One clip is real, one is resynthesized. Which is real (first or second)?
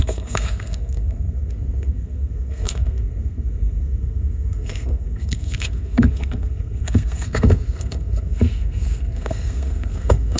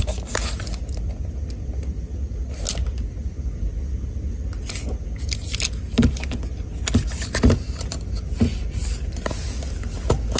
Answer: second